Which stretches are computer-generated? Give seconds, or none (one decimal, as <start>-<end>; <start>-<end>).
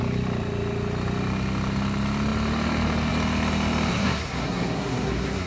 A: 3.9-5.5